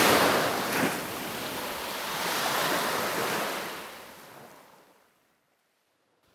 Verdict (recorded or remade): recorded